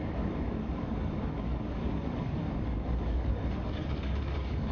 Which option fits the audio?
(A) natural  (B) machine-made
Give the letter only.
B